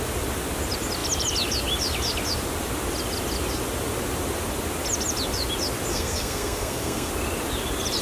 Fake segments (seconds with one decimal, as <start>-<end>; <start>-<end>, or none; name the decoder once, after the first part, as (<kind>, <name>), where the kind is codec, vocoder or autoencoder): 5.9-7.1 (codec, SNAC)

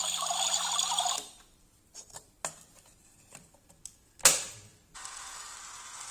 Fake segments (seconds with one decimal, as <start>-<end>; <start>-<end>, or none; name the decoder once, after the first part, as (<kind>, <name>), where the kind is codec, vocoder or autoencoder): 0.0-3.7 (vocoder, BigVGAN v2)

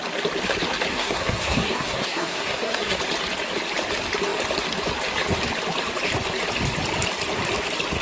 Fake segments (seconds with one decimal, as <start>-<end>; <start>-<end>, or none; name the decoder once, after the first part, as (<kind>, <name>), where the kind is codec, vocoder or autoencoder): 0.9-3.0 (codec, SNAC)